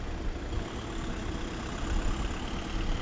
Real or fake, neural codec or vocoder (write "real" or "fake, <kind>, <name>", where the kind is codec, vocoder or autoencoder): real